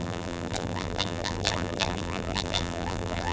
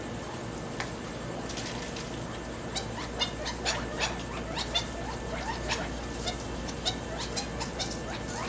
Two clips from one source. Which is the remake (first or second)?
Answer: first